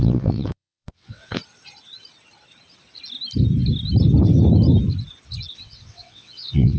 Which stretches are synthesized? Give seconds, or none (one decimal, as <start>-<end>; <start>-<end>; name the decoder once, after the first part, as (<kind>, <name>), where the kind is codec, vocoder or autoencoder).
0.0-1.4 (vocoder, WaveNeXt); 5.5-6.8